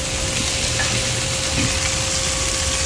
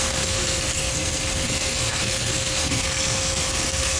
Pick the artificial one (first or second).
second